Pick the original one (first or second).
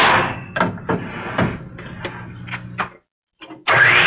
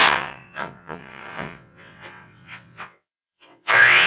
first